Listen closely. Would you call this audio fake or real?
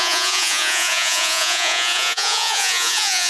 fake